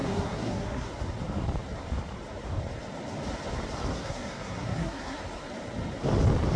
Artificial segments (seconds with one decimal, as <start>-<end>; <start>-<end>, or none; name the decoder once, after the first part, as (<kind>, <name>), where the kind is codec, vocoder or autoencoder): 0.0-0.9 (codec, SNAC); 3.9-5.2

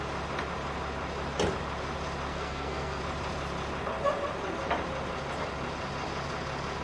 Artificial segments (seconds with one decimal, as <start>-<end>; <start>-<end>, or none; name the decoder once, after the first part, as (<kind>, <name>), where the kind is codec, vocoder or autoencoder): 2.3-3.0 (codec, SNAC)

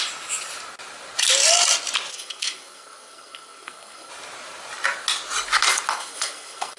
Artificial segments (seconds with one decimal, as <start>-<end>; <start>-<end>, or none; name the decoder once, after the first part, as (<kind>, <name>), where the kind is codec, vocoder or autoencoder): 2.1-4.1 (codec, SNAC); 5.9-6.8

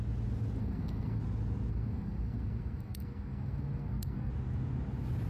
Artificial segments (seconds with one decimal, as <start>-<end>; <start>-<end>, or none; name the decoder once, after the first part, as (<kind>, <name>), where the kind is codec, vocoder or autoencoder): 0.6-1.2 (codec, SNAC); 1.7-4.3

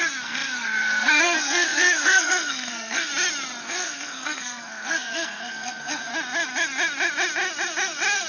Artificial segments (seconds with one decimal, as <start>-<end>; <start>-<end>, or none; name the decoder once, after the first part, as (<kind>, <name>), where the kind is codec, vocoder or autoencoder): 0.0-3.1 (codec, SNAC); 3.6-6.1